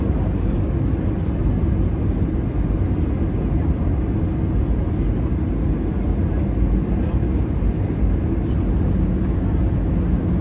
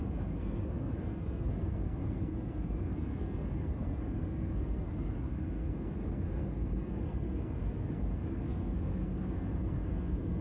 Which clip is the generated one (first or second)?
second